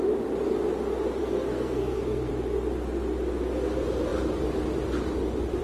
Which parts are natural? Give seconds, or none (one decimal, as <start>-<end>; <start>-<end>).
0.0-1.2; 2.3-5.6